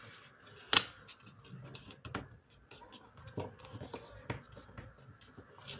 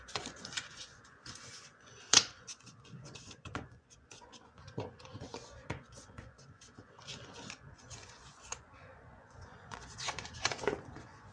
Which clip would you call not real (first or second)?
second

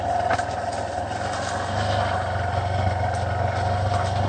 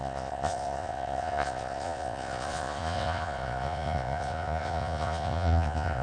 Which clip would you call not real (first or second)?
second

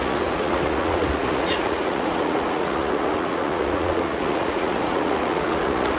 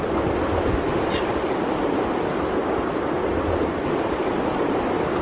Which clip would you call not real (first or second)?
first